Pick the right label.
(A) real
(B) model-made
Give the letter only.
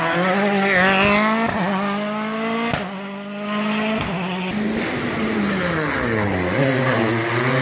A